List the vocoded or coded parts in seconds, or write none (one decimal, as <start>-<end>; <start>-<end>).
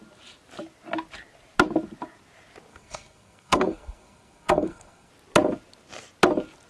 2.7-5.1